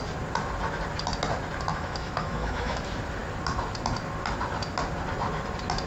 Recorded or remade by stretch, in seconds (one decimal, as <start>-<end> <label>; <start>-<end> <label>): 0.0-1.7 recorded; 1.7-2.8 remade; 2.8-5.9 recorded